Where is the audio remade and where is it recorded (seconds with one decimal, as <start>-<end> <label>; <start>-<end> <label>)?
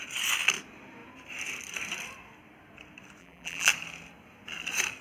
0.0-3.2 recorded; 3.2-3.7 remade; 3.7-5.0 recorded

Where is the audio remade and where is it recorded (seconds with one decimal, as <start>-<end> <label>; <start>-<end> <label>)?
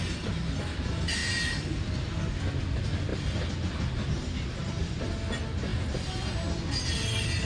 0.0-1.2 recorded; 1.2-1.9 remade; 1.9-3.1 recorded; 3.1-5.0 remade; 5.0-5.7 recorded; 5.7-6.3 remade; 6.3-7.5 recorded